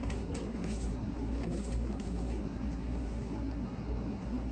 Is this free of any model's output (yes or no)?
no